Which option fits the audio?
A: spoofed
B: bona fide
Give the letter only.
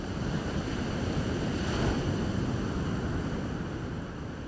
B